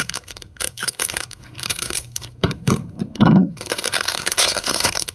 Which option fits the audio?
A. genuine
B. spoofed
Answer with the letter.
B